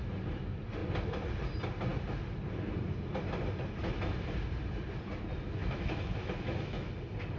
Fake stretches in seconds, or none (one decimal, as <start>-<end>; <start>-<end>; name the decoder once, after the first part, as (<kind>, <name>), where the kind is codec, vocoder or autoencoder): 5.6-6.9 (autoencoder, DAC-VAE)